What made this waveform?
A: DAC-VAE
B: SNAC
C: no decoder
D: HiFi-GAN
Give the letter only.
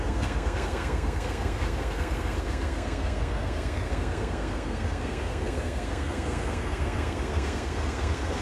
B